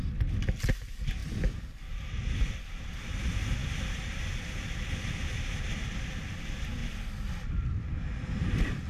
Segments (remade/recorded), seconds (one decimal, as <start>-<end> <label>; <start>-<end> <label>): 0.0-1.2 recorded; 1.2-2.7 remade; 2.7-3.6 recorded; 3.6-5.1 remade; 5.1-8.9 recorded

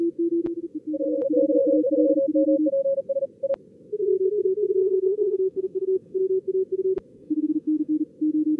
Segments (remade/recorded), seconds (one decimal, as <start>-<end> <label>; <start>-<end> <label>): 0.0-4.8 recorded; 4.8-6.2 remade; 6.2-7.1 recorded; 7.1-7.9 remade; 7.9-8.6 recorded

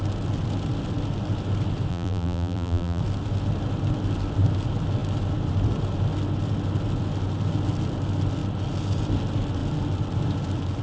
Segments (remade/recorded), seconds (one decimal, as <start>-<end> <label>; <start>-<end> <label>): 0.0-1.9 recorded; 1.9-3.0 remade; 3.0-10.8 recorded

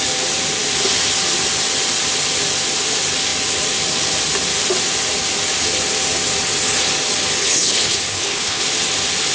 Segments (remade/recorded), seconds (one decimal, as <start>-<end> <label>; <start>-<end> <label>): 0.0-7.4 recorded; 7.4-8.6 remade; 8.6-9.3 recorded